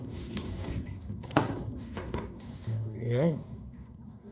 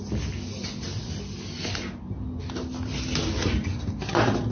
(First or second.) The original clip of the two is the second